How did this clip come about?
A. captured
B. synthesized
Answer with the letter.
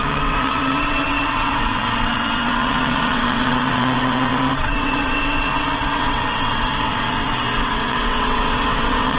B